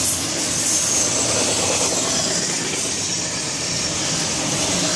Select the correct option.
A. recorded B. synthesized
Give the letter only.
A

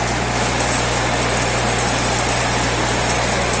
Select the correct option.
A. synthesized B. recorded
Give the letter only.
B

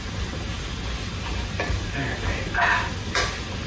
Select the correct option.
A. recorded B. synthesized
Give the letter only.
A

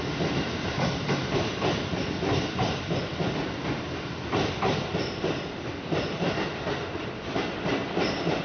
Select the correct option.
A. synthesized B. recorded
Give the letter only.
A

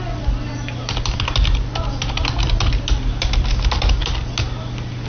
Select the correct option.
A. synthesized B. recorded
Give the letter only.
B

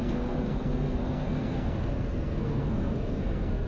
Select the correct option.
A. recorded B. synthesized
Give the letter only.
B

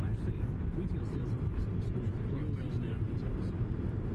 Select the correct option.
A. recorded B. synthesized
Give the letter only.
A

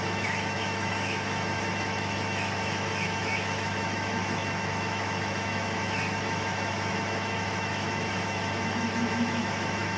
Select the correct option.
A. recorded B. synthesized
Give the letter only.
B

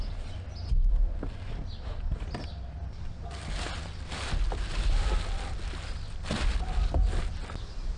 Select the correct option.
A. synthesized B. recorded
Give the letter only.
B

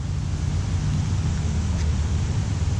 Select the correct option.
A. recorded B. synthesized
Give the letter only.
A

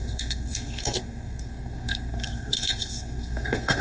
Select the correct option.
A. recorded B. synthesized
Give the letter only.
B